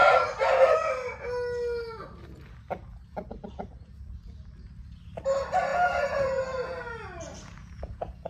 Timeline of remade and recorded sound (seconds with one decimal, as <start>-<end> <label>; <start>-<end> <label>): 0.0-5.7 recorded; 5.7-6.4 remade; 6.4-7.6 recorded; 7.6-8.3 remade